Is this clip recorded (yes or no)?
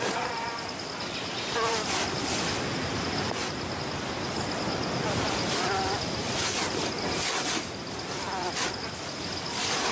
yes